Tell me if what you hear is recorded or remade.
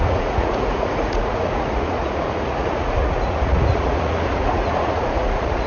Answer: remade